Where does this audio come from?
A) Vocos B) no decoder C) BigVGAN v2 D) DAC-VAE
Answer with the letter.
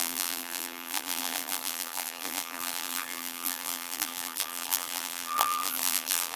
C